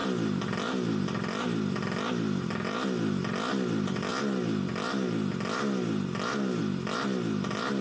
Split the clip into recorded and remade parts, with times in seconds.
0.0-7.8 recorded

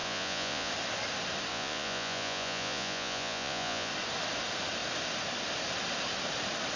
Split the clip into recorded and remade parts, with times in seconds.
0.0-0.7 remade; 0.7-1.5 recorded; 1.5-3.9 remade; 3.9-6.8 recorded